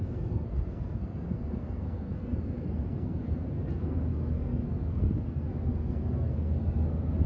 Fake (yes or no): yes